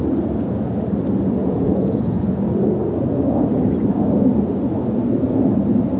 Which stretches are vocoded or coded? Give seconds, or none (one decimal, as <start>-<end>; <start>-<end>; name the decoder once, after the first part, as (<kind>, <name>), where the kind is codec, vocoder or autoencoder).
1.4-2.4 (vocoder, Vocos)